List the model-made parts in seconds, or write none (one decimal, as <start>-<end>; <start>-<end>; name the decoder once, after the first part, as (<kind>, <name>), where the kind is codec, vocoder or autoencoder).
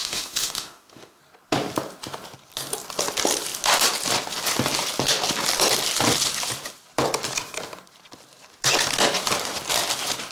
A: 0.0-1.2 (autoencoder, DAC-VAE)